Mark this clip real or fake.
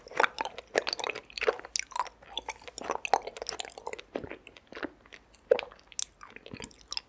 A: real